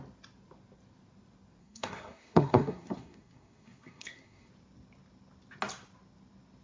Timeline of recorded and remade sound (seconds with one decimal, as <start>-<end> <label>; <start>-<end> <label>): 0.0-1.6 recorded; 1.6-4.5 remade; 4.5-6.6 recorded